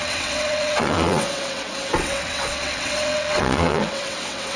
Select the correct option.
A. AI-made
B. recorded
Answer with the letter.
A